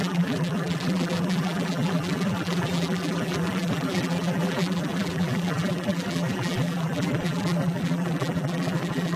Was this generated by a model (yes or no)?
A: yes